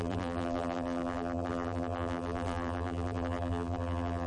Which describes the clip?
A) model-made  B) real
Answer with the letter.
A